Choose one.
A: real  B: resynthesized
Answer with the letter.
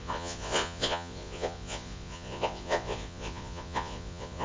B